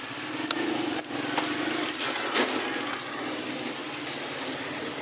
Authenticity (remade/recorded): recorded